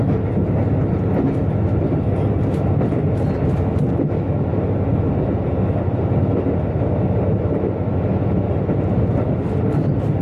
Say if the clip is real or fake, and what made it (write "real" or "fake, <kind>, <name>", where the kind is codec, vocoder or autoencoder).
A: real